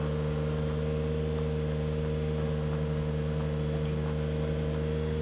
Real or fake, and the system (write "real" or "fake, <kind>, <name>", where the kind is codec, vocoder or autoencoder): real